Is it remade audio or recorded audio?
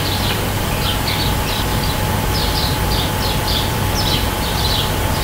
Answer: remade